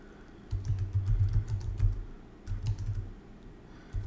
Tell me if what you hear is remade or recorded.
recorded